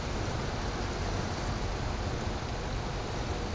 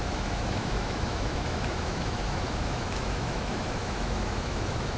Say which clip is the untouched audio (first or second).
first